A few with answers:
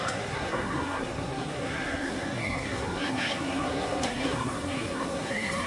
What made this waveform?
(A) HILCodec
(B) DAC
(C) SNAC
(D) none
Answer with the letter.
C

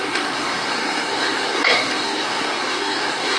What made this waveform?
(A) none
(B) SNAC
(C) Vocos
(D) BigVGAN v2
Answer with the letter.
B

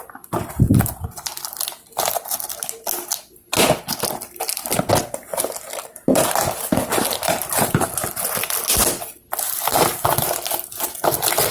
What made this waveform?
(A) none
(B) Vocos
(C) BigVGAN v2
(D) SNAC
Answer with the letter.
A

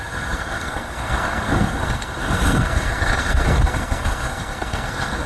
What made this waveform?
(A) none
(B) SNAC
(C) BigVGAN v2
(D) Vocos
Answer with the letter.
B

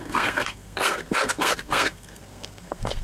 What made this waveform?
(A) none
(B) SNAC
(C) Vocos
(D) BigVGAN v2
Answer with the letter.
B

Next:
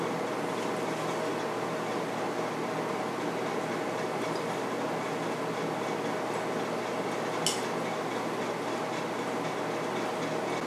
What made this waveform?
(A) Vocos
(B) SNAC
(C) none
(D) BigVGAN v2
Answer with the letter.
C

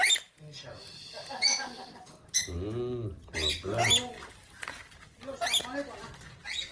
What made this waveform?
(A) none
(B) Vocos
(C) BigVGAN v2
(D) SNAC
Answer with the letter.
A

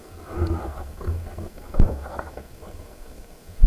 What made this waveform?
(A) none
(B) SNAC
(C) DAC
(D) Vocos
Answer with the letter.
B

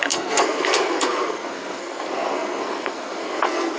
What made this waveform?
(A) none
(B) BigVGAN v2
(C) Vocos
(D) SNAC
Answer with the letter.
D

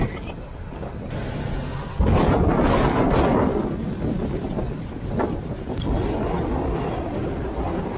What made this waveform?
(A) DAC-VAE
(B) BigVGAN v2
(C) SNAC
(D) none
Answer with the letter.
D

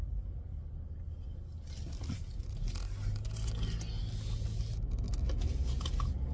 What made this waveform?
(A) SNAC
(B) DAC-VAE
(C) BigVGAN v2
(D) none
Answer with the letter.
D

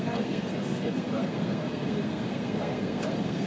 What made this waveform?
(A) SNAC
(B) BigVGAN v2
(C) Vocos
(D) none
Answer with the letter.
A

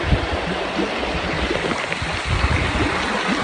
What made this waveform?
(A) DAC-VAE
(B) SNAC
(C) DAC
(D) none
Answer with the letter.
D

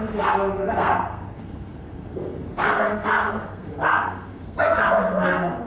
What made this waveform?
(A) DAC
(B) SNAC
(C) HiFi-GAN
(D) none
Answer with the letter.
B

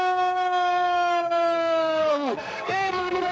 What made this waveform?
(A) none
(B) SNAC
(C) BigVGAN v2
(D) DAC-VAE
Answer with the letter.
B